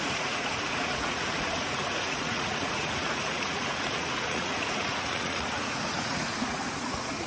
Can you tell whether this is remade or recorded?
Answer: remade